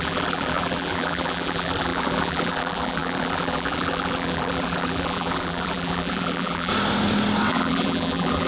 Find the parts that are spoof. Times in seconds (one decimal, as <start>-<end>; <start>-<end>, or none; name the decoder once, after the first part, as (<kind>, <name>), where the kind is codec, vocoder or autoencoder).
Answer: 0.0-6.7 (vocoder, BigVGAN v2); 7.5-8.5